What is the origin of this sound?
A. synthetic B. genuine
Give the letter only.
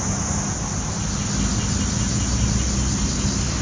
B